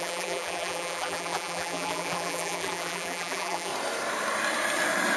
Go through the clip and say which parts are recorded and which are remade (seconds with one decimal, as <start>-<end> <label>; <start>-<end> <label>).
0.0-3.7 remade; 3.7-5.2 recorded